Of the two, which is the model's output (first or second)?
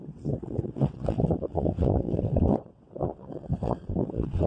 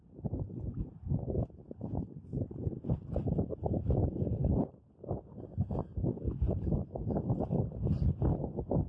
first